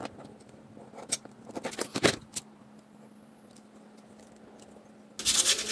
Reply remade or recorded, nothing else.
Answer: recorded